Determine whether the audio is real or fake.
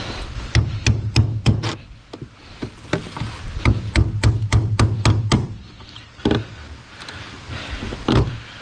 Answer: real